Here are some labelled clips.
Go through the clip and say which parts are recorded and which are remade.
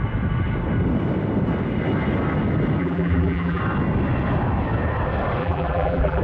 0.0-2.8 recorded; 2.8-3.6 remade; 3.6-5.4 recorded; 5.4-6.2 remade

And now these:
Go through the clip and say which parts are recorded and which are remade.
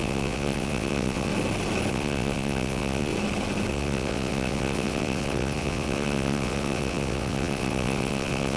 0.0-1.3 remade; 1.3-1.9 recorded; 1.9-3.1 remade; 3.1-3.7 recorded; 3.7-8.6 remade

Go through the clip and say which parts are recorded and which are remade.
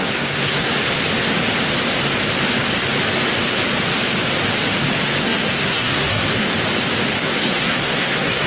0.0-0.7 remade; 0.7-5.2 recorded; 5.2-6.5 remade; 6.5-7.2 recorded; 7.2-8.5 remade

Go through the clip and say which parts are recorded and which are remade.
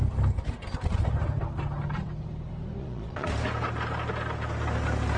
0.0-2.8 recorded; 2.8-3.3 remade; 3.3-5.2 recorded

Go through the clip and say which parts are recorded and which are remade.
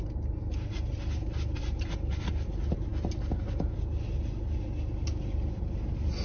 0.0-1.2 recorded; 1.2-2.1 remade; 2.1-6.2 recorded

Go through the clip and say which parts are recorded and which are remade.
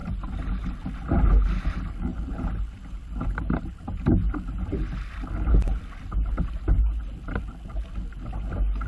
0.0-2.1 recorded; 2.1-3.9 remade; 3.9-8.9 recorded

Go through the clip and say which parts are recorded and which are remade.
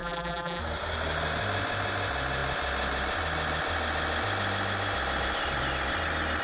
0.0-0.6 remade; 0.6-6.4 recorded